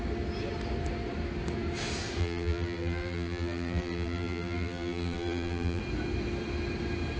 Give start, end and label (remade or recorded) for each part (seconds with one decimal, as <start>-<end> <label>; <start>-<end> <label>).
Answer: 0.0-2.2 recorded; 2.2-5.8 remade; 5.8-7.2 recorded